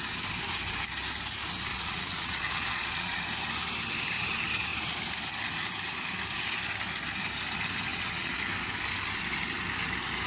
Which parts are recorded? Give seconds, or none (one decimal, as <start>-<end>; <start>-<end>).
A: 0.0-1.7; 3.2-7.9; 8.4-10.3

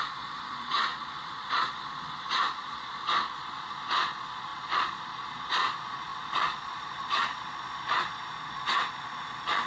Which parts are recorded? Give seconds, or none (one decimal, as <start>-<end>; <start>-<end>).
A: none

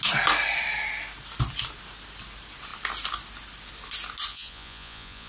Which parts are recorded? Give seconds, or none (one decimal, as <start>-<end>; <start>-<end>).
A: 0.0-4.3